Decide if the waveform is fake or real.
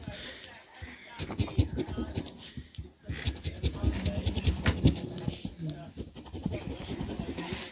real